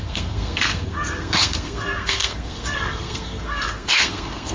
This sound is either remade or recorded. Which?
remade